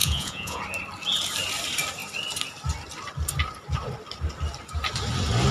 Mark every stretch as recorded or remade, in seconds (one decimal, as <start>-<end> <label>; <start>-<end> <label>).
0.0-0.6 remade; 0.6-5.5 recorded